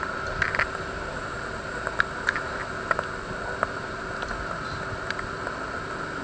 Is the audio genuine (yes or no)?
yes